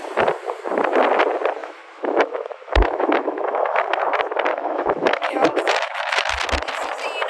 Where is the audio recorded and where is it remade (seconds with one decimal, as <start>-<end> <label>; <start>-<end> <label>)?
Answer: 0.0-1.6 recorded; 1.6-4.0 remade; 4.0-4.5 recorded; 4.5-6.3 remade; 6.3-7.3 recorded